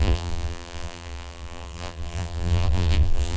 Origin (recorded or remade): remade